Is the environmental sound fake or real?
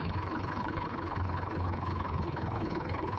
fake